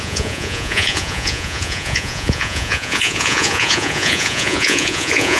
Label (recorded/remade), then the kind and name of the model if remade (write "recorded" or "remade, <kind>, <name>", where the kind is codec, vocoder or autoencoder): remade, vocoder, Vocos